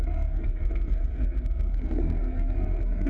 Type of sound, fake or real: fake